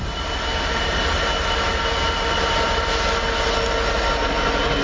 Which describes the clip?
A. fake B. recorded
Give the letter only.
B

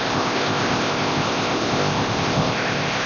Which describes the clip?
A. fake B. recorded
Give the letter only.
A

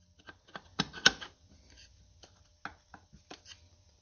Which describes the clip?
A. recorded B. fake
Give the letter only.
A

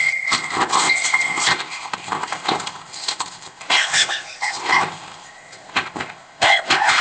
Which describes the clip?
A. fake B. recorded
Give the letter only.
A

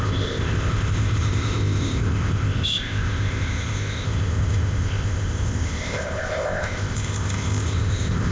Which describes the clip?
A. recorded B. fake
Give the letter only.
B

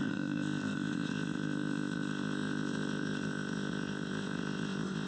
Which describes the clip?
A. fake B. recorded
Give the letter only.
A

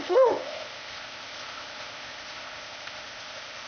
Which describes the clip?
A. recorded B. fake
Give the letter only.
B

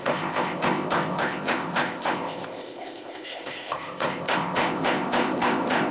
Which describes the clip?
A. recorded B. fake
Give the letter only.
B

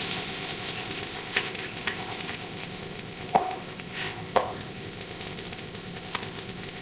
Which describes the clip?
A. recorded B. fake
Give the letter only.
B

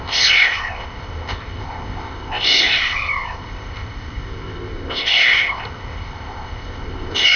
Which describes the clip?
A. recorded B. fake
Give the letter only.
B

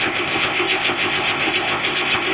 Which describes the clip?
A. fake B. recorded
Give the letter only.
A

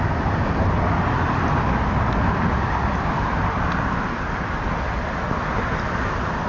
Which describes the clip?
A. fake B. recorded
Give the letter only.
B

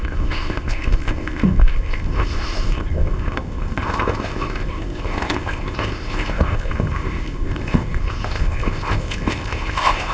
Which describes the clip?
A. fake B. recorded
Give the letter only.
A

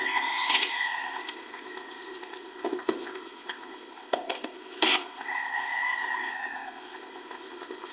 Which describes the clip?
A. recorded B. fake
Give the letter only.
B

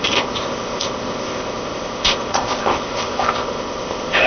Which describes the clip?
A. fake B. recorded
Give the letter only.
A